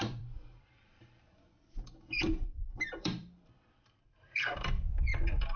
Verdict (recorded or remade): remade